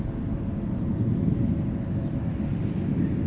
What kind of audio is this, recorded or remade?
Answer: recorded